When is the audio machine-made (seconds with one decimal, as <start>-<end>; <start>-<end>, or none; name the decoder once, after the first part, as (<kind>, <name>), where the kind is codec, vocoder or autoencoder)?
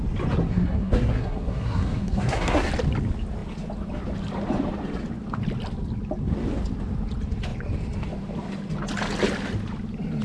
0.5-2.7 (codec, SNAC)